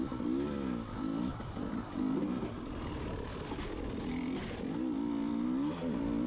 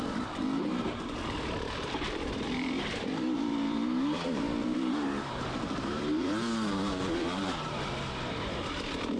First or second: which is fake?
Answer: second